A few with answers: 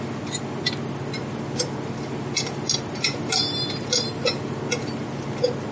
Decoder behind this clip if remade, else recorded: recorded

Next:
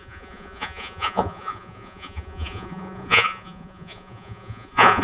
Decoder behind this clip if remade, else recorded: remade, vocoder, Vocos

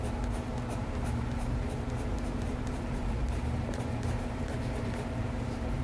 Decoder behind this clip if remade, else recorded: remade, vocoder, BigVGAN v2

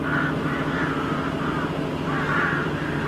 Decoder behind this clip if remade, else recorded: recorded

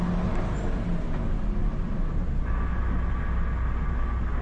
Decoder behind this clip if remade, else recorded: recorded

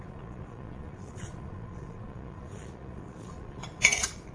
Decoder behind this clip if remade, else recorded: remade, vocoder, Vocos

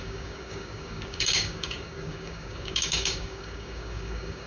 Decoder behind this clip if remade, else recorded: remade, codec, DAC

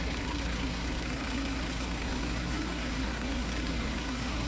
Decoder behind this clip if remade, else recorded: remade, codec, SNAC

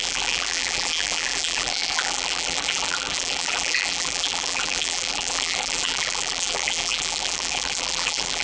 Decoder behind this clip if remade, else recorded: remade, vocoder, BigVGAN v2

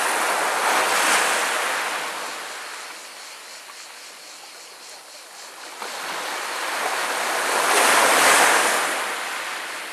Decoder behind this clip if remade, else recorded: recorded